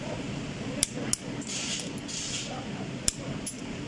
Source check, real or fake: real